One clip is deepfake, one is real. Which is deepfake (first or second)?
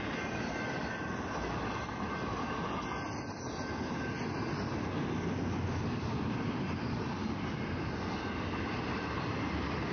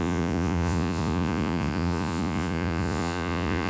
second